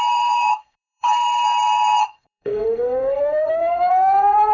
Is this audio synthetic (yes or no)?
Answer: yes